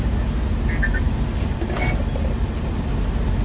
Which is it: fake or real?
real